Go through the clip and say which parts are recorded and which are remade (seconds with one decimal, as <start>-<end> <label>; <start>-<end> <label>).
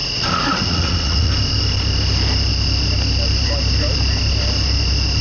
0.0-1.3 remade; 1.3-5.2 recorded